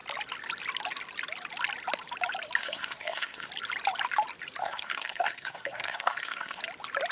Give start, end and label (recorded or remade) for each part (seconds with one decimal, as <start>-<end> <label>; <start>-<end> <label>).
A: 0.0-2.6 recorded; 2.6-3.5 remade; 3.5-4.6 recorded; 4.6-6.6 remade; 6.6-7.1 recorded